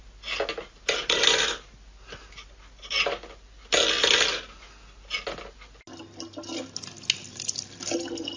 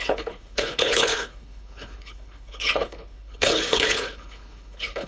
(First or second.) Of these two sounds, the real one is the first